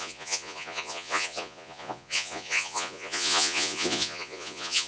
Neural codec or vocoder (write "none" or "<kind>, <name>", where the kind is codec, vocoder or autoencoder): vocoder, Vocos